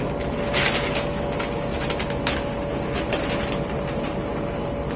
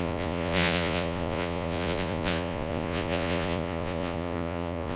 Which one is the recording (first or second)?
first